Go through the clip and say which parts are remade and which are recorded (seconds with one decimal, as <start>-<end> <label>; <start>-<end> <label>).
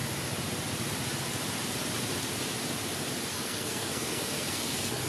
0.0-3.3 recorded; 3.3-5.1 remade